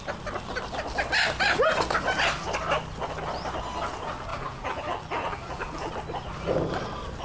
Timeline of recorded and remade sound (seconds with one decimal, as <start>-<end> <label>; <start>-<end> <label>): 0.0-4.3 recorded; 4.3-5.9 remade; 5.9-7.2 recorded